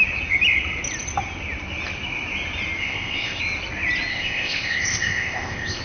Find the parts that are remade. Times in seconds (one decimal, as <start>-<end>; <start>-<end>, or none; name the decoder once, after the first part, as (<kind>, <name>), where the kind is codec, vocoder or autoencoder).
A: 2.8-3.4 (codec, ZipCodec); 4.1-5.8